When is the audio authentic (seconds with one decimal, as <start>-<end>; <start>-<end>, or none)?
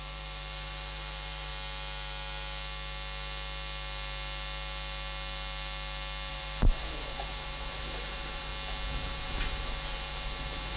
1.5-6.3; 8.5-9.1